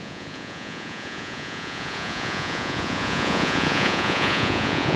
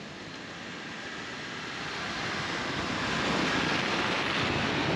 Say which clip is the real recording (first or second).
second